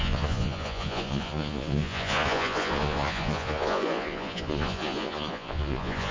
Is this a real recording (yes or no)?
no